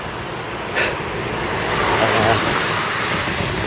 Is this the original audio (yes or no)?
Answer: yes